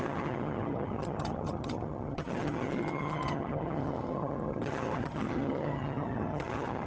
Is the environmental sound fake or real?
fake